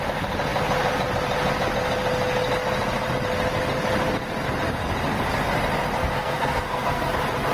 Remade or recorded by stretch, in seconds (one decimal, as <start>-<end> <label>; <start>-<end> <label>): 0.0-6.0 recorded; 6.0-7.1 remade; 7.1-7.5 recorded